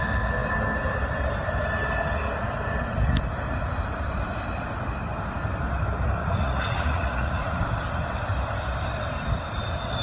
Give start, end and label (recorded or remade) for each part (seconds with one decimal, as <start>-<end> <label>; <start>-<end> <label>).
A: 0.0-6.2 recorded; 6.2-7.6 remade; 7.6-10.0 recorded

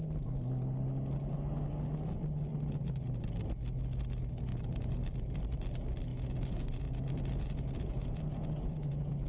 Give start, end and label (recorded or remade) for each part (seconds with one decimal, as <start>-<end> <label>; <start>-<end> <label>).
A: 0.0-6.1 recorded; 6.1-9.3 remade

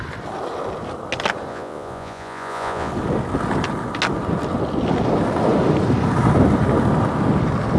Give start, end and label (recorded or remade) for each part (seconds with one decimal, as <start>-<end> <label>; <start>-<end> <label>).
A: 0.0-1.5 recorded; 1.5-2.9 remade; 2.9-7.8 recorded